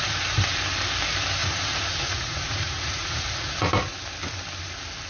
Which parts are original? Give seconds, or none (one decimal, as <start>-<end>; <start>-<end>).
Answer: 0.0-1.4; 3.7-5.1